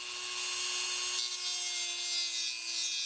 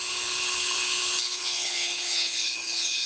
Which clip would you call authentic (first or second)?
first